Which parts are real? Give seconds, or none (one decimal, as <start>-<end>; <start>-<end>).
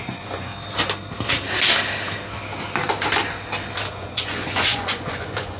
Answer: 0.5-3.9